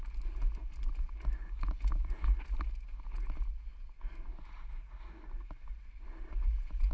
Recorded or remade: recorded